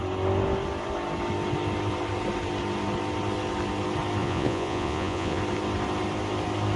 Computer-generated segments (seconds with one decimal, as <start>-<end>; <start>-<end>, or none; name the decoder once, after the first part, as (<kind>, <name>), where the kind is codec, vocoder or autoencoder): 4.2-5.4 (vocoder, Vocos)